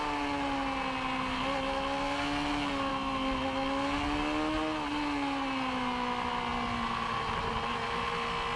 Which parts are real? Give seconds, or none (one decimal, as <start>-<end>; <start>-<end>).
0.0-8.6